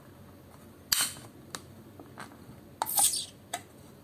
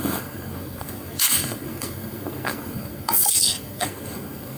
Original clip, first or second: first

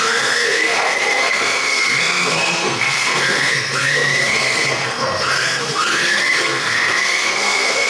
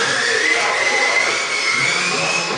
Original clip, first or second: second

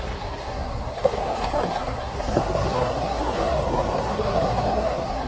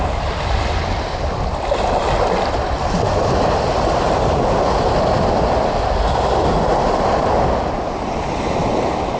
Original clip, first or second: second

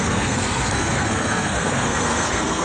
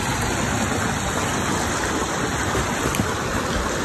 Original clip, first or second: second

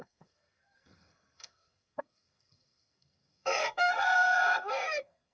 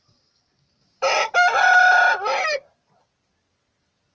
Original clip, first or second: second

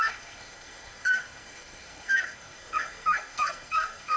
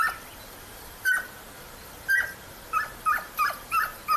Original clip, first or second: second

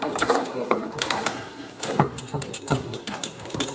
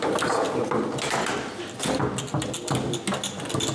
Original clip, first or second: second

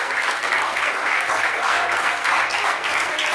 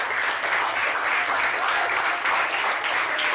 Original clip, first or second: second